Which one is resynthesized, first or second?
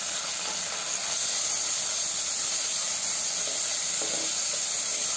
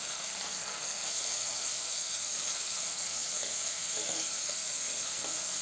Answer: second